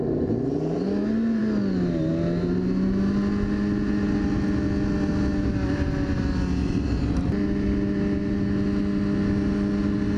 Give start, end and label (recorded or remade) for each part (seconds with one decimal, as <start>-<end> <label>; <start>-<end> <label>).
0.0-10.2 recorded